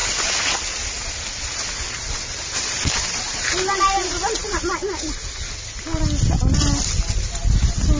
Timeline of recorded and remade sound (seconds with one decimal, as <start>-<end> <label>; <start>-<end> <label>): 0.0-8.0 recorded